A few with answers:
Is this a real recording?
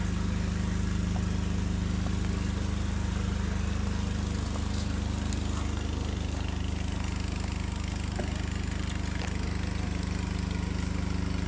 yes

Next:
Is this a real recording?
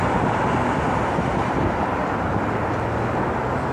yes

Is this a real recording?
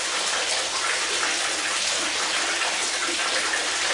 yes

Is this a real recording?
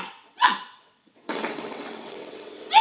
no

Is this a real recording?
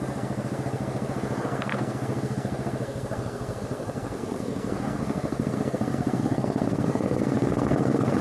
no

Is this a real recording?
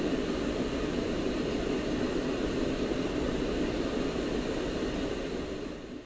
yes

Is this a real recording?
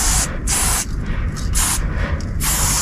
yes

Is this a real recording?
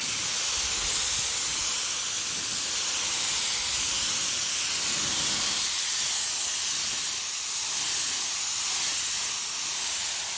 yes